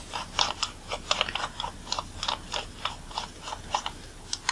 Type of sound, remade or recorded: recorded